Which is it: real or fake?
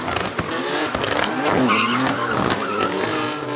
real